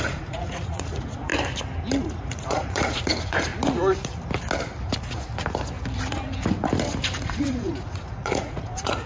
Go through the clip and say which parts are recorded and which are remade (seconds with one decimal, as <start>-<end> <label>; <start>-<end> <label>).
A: 0.0-1.3 remade; 1.3-2.0 recorded; 2.0-3.5 remade; 3.5-7.4 recorded; 7.4-9.1 remade